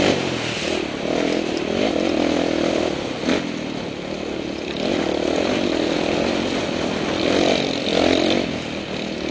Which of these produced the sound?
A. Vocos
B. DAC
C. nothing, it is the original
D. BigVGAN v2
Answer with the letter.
C